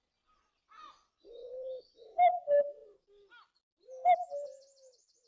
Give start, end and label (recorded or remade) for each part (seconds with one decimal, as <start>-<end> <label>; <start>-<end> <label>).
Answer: 0.0-5.3 recorded